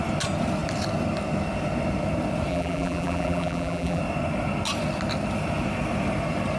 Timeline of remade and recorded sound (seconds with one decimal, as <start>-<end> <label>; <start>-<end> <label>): 0.0-2.5 recorded; 2.5-4.0 remade; 4.0-6.6 recorded